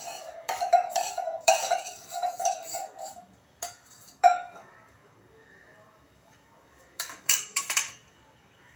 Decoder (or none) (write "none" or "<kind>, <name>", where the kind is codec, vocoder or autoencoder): codec, DAC